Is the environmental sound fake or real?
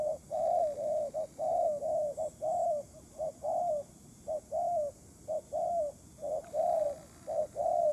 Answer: real